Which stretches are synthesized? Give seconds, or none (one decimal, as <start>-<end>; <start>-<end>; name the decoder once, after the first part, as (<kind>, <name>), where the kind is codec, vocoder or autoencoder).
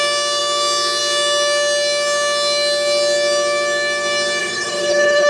4.4-5.3 (codec, HILCodec)